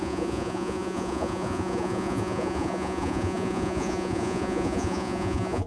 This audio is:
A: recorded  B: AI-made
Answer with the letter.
B